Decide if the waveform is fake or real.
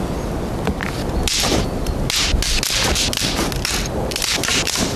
real